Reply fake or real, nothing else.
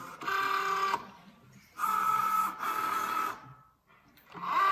real